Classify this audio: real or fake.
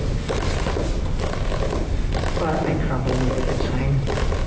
real